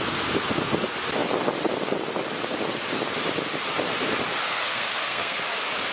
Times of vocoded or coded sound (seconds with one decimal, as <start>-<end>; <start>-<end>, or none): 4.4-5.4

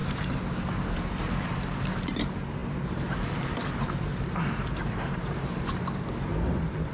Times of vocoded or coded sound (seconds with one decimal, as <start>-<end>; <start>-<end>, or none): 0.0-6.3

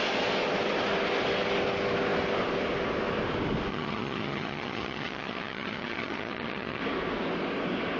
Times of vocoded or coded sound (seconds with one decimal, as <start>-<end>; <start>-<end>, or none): 3.7-6.8